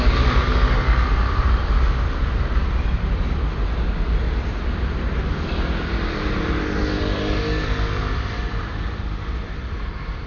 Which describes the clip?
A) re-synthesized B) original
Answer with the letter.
B